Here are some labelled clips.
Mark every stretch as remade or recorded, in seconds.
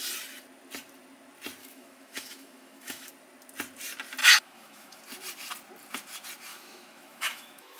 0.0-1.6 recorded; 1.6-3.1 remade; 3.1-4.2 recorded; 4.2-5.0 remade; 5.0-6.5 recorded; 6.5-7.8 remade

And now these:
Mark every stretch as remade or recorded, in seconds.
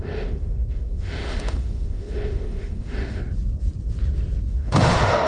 0.0-3.2 remade; 3.2-4.5 recorded; 4.5-5.3 remade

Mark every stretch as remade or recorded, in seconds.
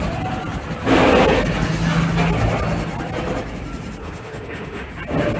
0.0-4.0 recorded; 4.0-4.9 remade; 4.9-5.4 recorded